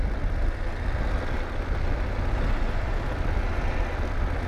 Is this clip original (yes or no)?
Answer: yes